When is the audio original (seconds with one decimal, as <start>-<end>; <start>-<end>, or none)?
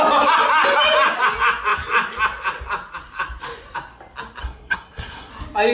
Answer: 0.0-4.4; 5.3-5.7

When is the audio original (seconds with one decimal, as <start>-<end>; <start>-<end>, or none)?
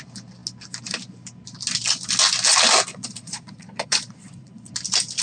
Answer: 0.0-2.9; 4.7-5.2